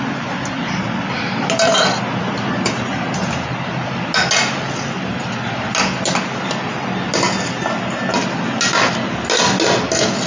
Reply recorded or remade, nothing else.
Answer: recorded